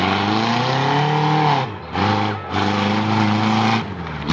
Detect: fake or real real